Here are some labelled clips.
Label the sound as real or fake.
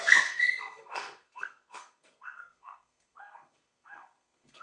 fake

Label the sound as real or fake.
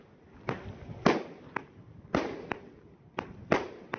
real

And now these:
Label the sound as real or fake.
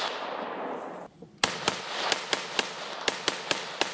real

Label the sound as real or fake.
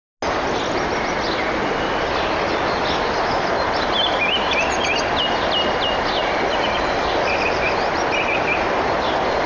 real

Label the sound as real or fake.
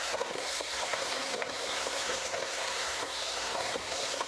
fake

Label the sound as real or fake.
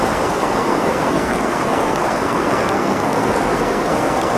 fake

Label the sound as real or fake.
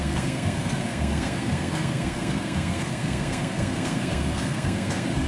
fake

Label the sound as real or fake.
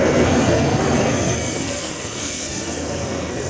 fake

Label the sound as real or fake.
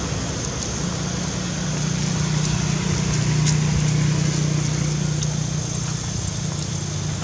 real